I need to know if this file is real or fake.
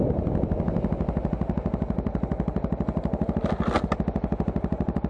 real